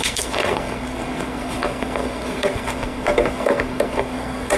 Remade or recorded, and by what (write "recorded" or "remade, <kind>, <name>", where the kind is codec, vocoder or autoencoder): remade, codec, SNAC